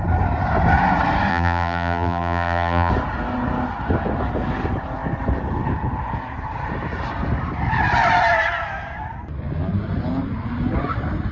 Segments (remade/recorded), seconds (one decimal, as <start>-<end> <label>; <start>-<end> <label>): 0.0-1.3 recorded; 1.3-2.9 remade; 2.9-11.3 recorded